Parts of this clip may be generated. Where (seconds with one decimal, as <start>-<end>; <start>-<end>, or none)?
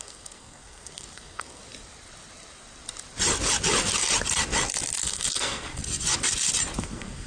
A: 0.0-1.6; 5.0-5.8; 6.8-7.3